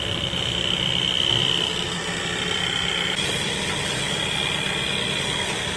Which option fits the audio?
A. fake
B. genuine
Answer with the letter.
B